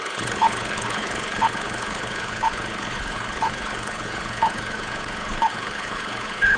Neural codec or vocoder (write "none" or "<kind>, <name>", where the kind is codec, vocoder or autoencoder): codec, HILCodec